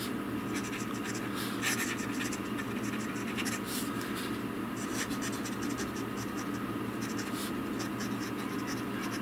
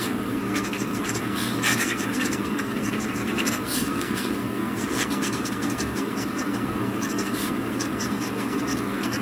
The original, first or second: first